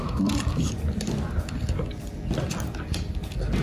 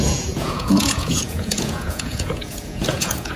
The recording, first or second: first